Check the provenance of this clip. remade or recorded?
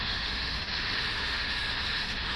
remade